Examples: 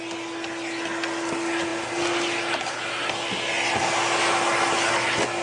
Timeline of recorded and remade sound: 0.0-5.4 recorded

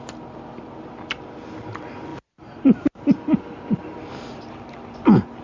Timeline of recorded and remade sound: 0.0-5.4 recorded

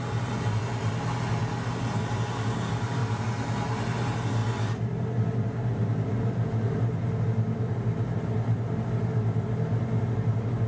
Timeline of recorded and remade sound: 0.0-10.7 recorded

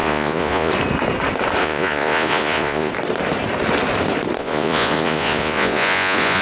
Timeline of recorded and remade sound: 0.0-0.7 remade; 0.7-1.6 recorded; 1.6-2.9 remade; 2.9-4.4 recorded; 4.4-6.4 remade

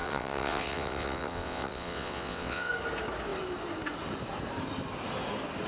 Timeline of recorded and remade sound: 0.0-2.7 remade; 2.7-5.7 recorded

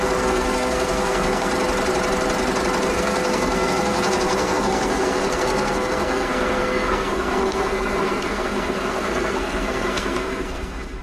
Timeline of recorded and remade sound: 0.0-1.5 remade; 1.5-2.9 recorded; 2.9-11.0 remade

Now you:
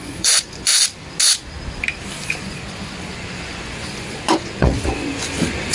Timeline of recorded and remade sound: 0.0-0.7 remade; 0.7-2.4 recorded; 2.4-5.7 remade

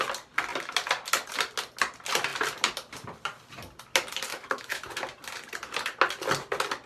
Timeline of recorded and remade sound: 0.0-4.3 recorded; 4.3-4.9 remade; 4.9-6.9 recorded